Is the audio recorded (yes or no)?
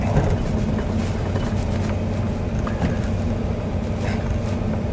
yes